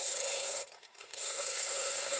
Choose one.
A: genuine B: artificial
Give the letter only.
B